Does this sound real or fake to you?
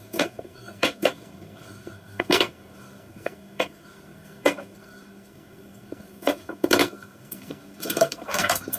fake